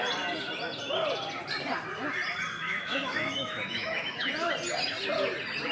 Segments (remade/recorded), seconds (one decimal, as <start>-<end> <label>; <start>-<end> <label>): 0.0-2.6 recorded; 2.6-4.3 remade; 4.3-5.7 recorded